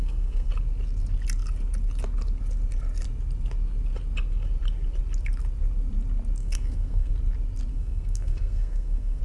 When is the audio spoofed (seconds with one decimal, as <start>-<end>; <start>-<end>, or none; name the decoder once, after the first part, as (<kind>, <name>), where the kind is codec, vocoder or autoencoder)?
0.0-0.5 (codec, SNAC); 6.4-7.1; 7.7-9.2